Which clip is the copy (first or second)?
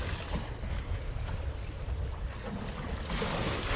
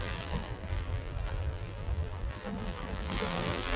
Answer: second